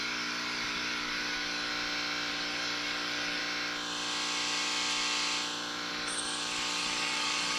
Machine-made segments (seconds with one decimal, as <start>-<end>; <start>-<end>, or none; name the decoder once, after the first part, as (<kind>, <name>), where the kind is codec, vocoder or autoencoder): 0.0-1.7 (codec, DAC); 2.3-3.4; 5.9-7.6